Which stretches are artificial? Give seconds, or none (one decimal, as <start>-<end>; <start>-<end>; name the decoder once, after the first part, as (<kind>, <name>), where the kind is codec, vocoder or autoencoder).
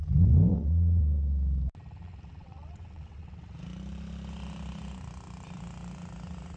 0.5-1.0 (vocoder, WaveNeXt); 2.4-3.4